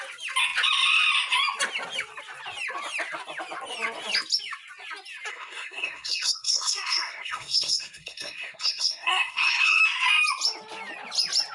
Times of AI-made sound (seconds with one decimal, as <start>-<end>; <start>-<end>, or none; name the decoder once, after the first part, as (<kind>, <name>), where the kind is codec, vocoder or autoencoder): 5.3-9.8 (codec, SNAC)